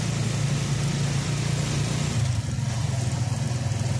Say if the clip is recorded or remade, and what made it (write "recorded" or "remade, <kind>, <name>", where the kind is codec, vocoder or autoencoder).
recorded